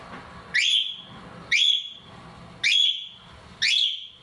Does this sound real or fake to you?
real